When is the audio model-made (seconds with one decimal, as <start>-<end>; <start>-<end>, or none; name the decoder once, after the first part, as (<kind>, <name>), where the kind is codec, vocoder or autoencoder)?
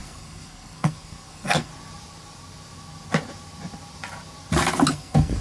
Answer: 0.0-1.7 (codec, SNAC); 4.9-5.4